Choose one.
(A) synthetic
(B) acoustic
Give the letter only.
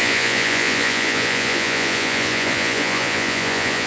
A